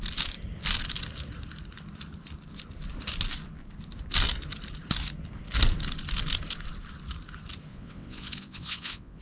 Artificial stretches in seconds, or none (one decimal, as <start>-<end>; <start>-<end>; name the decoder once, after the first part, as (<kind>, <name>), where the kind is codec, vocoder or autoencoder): 7.7-9.2 (vocoder, WaveNeXt)